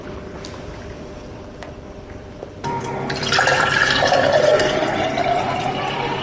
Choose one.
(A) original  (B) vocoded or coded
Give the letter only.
B